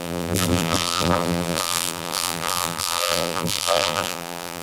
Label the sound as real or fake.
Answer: fake